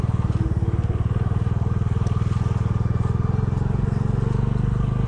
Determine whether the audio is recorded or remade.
recorded